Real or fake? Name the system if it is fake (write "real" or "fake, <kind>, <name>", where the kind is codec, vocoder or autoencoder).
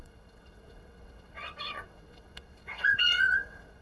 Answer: fake, vocoder, WaveNeXt